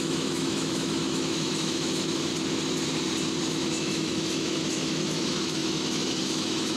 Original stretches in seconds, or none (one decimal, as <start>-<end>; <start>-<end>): 2.3-3.4